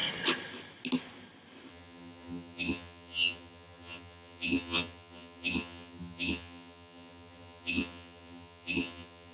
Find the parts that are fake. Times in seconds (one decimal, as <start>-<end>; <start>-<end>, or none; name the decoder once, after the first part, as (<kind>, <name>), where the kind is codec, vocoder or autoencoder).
1.7-9.3 (vocoder, HiFi-GAN)